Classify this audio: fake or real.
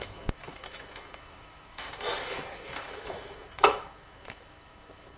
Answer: fake